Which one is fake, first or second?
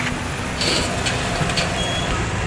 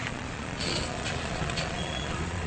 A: second